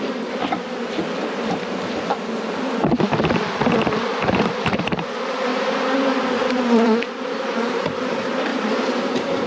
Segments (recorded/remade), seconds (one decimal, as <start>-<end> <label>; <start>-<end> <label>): 0.0-5.5 remade; 5.5-6.3 recorded; 6.3-8.5 remade; 8.5-9.1 recorded; 9.1-9.5 remade